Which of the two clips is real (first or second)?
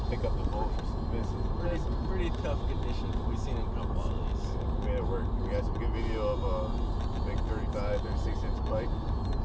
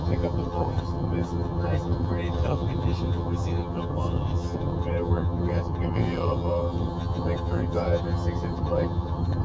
first